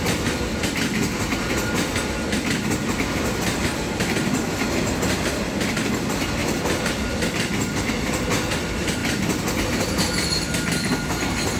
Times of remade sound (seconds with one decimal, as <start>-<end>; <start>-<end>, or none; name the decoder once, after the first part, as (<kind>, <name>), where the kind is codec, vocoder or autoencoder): none